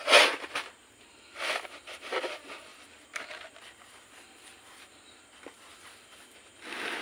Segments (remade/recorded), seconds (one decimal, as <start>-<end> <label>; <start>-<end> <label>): 0.0-7.0 recorded